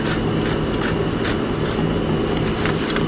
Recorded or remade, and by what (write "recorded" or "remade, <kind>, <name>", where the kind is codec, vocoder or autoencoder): recorded